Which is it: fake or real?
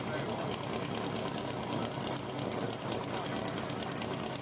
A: real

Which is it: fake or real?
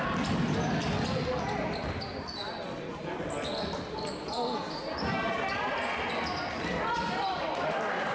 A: real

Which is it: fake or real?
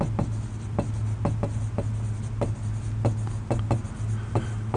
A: real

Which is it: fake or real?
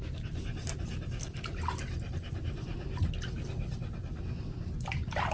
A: real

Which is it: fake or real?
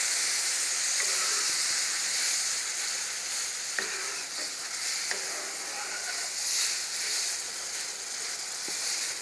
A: real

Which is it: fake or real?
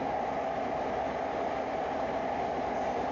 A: real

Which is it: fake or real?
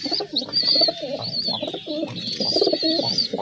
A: real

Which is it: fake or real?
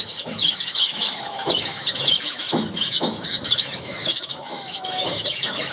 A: fake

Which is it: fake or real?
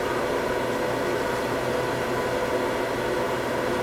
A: real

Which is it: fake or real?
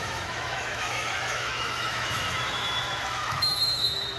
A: fake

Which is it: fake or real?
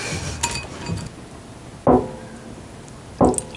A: real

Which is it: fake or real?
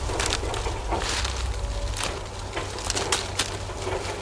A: real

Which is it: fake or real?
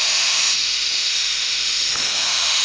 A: fake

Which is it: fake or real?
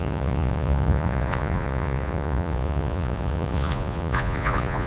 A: fake